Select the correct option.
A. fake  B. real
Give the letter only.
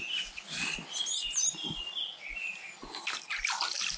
B